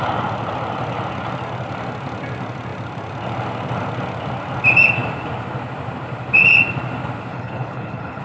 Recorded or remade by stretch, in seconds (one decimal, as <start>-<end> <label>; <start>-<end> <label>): 0.0-7.3 recorded; 7.3-8.2 remade